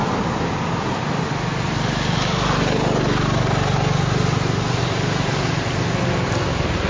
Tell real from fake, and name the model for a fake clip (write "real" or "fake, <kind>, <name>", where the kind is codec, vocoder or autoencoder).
real